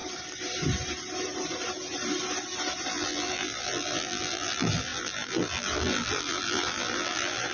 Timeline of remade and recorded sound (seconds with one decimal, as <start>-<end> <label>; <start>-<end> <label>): 0.0-2.9 recorded; 2.9-7.5 remade